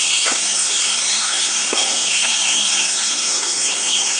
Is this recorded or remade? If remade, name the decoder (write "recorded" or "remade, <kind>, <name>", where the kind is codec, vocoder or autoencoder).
remade, codec, SNAC